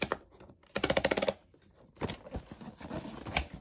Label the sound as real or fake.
real